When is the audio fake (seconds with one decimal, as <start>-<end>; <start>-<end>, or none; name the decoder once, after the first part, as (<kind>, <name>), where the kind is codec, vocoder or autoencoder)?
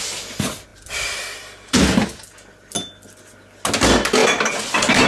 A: 0.7-1.8 (vocoder, BigVGAN v2)